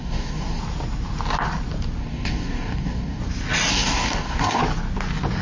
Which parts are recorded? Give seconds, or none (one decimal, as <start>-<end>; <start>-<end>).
0.6-2.0; 3.2-3.7; 4.6-5.4